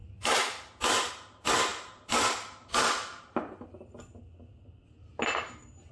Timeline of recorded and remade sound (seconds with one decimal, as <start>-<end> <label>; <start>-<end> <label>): 0.0-5.9 recorded